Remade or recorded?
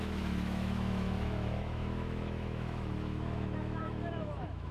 remade